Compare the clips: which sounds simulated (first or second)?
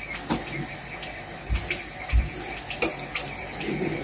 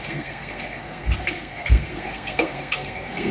second